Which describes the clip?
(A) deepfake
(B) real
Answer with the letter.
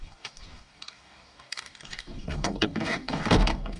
A